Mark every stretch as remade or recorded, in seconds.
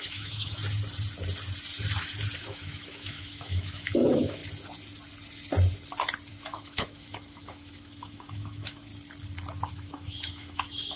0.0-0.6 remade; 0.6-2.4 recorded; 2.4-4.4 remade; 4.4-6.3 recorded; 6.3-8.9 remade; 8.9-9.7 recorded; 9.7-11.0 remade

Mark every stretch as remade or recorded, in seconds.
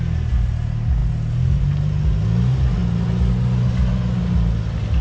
0.0-5.0 recorded